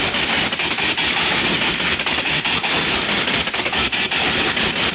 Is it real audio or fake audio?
real